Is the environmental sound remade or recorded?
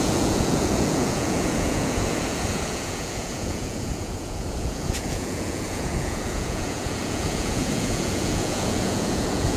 remade